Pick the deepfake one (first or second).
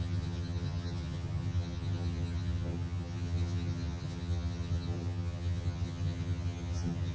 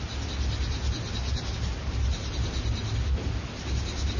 first